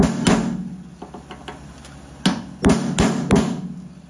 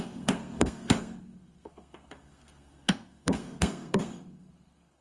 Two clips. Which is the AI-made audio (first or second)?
second